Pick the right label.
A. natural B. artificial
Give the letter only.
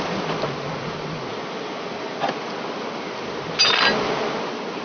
A